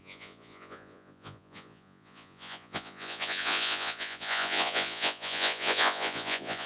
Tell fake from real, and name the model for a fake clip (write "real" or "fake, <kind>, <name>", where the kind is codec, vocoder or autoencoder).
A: fake, vocoder, Vocos